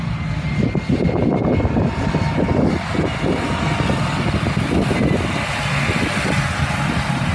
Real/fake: real